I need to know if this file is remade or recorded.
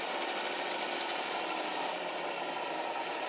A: recorded